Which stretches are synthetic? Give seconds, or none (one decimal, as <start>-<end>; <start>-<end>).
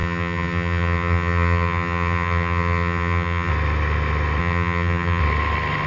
0.0-3.5; 4.4-5.2